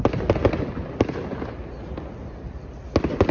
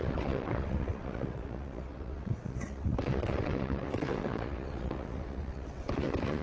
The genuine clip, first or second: first